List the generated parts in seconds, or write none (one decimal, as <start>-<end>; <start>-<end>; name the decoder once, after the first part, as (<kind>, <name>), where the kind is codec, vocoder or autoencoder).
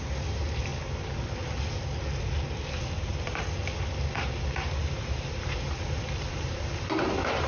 0.0-0.7 (vocoder, BigVGAN v2); 4.8-7.5